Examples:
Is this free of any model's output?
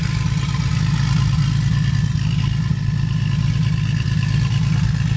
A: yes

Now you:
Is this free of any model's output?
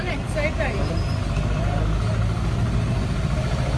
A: yes